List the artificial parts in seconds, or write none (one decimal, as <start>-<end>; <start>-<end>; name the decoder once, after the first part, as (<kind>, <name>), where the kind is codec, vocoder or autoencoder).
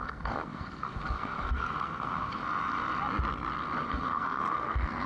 0.0-2.4 (codec, SNAC); 3.9-5.1